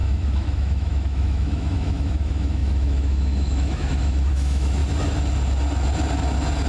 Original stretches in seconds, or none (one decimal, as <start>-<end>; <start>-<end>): 4.8-6.7